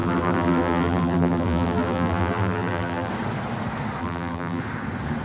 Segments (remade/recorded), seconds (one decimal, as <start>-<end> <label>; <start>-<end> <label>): 0.0-3.1 remade; 3.1-4.0 recorded; 4.0-4.6 remade; 4.6-5.2 recorded

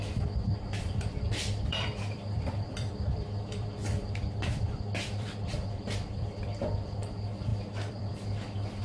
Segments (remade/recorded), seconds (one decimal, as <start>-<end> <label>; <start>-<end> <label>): 0.0-8.8 remade

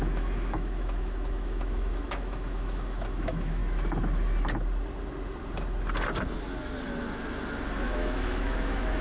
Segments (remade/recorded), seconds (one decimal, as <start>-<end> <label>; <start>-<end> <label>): 0.0-3.6 remade; 3.6-7.8 recorded; 7.8-9.0 remade

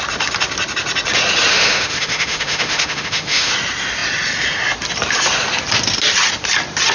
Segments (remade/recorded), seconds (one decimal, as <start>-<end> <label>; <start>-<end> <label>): 0.0-1.5 recorded; 1.5-3.5 remade; 3.5-6.9 recorded

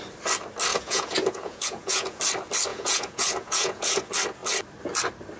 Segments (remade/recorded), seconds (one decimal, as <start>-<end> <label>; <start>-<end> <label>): 0.0-0.7 recorded; 0.7-2.2 remade; 2.2-2.7 recorded; 2.7-4.0 remade; 4.0-5.4 recorded

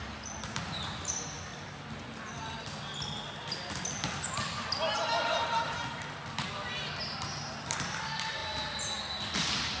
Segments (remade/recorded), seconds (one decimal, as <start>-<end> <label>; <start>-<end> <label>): 0.0-9.8 recorded

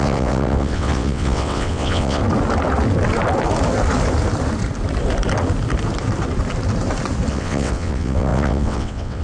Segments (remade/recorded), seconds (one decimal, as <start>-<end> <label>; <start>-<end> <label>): 0.0-2.2 remade; 2.2-7.3 recorded; 7.3-9.2 remade

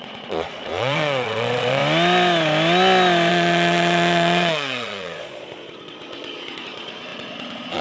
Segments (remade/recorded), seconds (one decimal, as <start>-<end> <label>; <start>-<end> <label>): 0.0-1.8 remade; 1.8-3.3 recorded; 3.3-7.8 remade